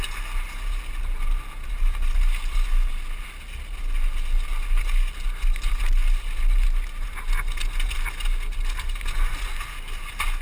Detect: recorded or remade recorded